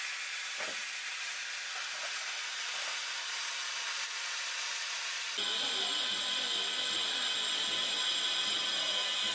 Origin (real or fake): real